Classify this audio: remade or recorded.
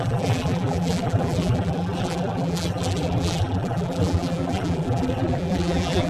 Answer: remade